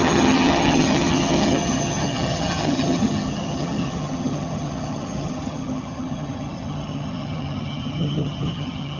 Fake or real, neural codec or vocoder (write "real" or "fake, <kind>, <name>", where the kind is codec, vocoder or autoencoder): fake, vocoder, HiFi-GAN